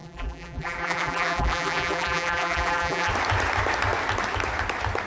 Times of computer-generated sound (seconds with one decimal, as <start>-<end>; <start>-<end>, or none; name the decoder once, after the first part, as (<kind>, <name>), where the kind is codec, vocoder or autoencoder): 0.0-3.1 (vocoder, BigVGAN v2)